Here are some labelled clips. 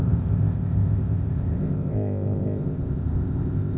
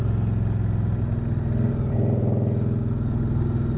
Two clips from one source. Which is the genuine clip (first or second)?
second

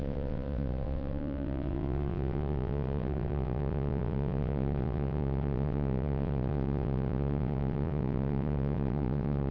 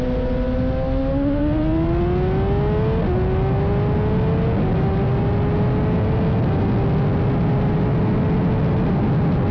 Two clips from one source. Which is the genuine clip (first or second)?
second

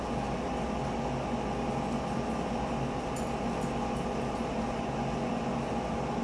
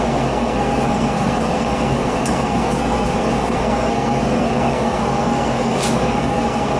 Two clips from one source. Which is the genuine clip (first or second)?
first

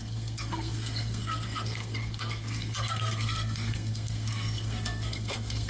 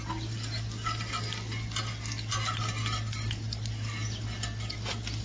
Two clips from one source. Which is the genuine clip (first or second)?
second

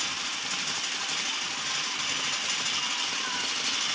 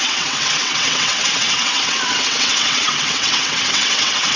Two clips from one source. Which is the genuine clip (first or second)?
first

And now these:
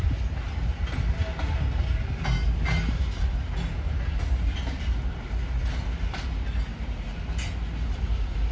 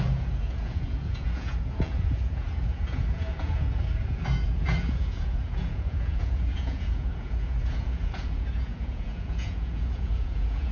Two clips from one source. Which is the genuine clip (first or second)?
first